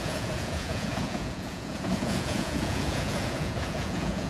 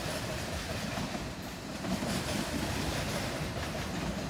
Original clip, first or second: second